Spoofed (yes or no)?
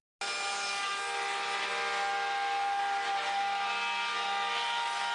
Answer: no